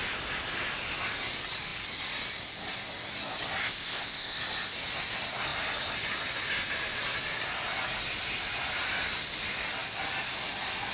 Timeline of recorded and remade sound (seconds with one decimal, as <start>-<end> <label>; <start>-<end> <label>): 0.0-3.6 recorded; 3.6-4.4 remade; 4.4-10.9 recorded